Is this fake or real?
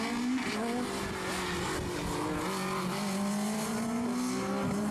real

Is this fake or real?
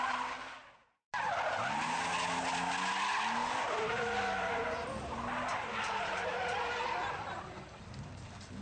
real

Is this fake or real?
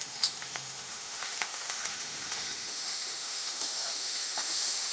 fake